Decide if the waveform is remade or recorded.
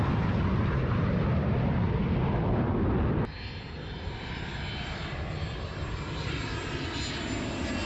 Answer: recorded